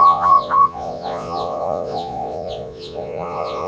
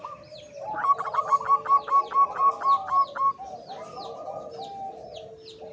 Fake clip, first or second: first